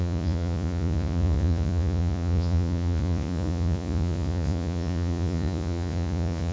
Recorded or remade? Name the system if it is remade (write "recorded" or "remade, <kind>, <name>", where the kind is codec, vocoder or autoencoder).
remade, vocoder, Vocos